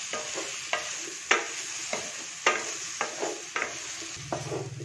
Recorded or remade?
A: recorded